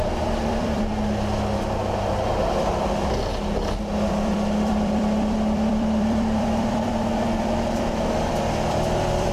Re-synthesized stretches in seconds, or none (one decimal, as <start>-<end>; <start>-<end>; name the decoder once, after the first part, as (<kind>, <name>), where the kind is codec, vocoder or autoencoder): 0.0-0.9 (vocoder, BigVGAN v2); 4.1-9.3